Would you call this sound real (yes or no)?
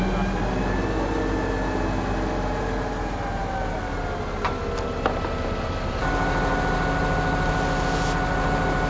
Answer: yes